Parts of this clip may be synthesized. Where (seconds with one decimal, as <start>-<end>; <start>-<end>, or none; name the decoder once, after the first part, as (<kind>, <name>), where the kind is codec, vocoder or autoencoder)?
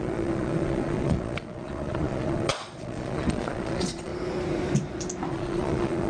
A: 0.0-4.1 (vocoder, Vocos); 5.3-6.1